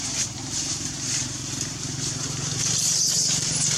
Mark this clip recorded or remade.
remade